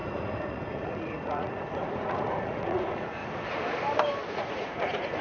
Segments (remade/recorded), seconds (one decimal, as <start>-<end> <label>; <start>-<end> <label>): 0.0-3.2 remade; 3.2-4.3 recorded; 4.3-5.2 remade